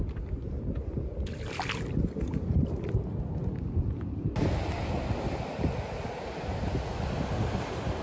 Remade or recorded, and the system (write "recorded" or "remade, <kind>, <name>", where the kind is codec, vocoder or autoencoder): recorded